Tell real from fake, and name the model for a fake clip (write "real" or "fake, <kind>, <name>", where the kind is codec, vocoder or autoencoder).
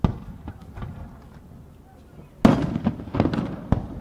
real